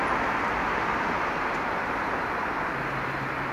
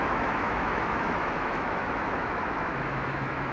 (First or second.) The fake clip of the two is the second